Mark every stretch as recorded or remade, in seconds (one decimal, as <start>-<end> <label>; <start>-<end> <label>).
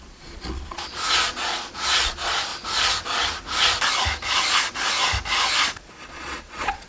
0.0-2.5 remade; 2.5-5.8 recorded; 5.8-6.9 remade